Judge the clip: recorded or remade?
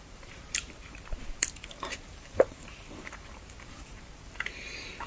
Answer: remade